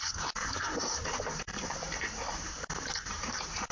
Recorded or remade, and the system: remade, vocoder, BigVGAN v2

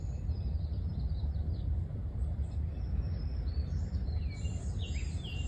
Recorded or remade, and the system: remade, vocoder, BigVGAN v2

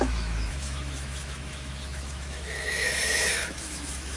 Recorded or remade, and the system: remade, autoencoder, DAC-VAE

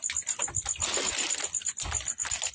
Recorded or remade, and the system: recorded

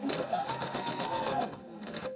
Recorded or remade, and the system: remade, codec, SNAC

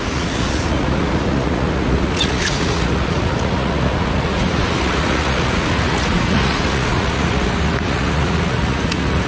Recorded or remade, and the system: remade, vocoder, Vocos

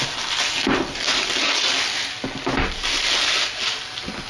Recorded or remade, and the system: recorded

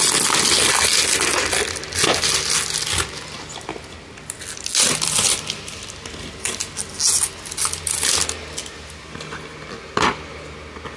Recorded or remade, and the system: recorded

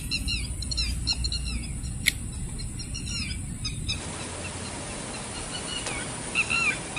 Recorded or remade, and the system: recorded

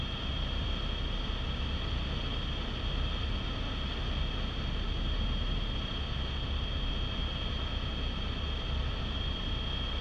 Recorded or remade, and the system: recorded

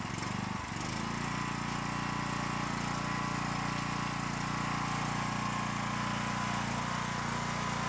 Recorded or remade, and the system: recorded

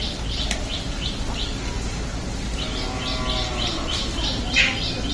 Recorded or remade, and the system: recorded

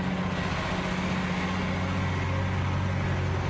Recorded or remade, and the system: recorded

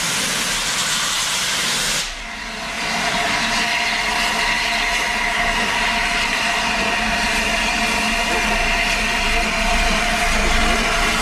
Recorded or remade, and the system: recorded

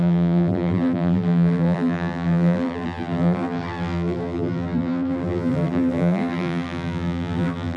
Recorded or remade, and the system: remade, vocoder, BigVGAN v2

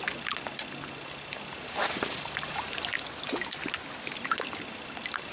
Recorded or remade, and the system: recorded